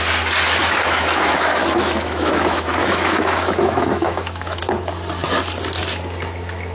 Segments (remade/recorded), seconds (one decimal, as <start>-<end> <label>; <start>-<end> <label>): 0.0-0.6 recorded; 0.6-4.6 remade; 4.6-6.7 recorded